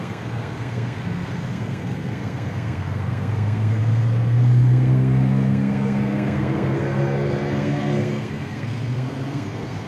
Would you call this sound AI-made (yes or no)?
yes